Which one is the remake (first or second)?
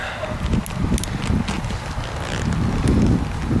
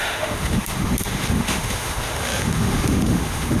second